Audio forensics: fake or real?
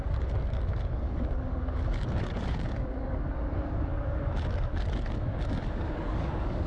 fake